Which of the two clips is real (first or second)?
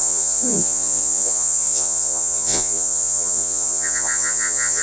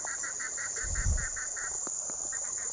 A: second